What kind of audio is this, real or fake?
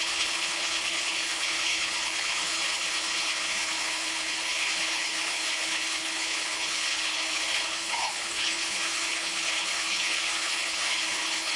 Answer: fake